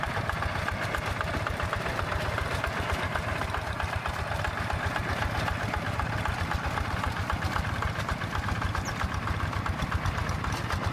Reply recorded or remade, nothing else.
recorded